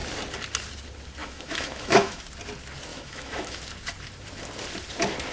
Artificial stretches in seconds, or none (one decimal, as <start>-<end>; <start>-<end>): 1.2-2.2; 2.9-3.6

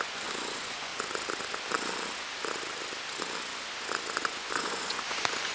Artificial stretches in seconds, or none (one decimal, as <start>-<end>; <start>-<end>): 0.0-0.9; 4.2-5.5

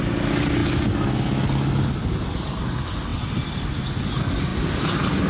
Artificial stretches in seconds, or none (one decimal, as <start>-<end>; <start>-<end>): none

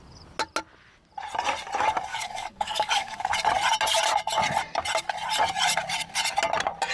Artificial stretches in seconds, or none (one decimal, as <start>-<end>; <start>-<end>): 2.1-3.3

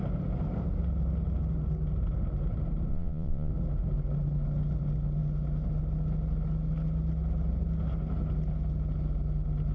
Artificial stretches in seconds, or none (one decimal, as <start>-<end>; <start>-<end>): 2.9-3.5

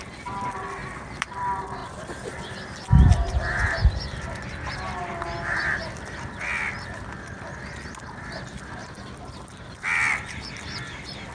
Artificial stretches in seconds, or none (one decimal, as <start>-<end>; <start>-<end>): 0.8-1.4; 8.8-10.4

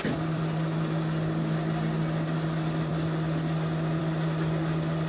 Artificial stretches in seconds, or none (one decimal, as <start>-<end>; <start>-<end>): 0.0-2.9; 4.0-5.1